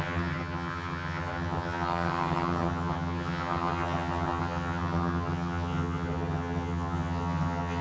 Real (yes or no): no